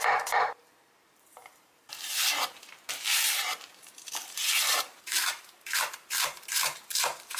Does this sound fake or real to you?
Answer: fake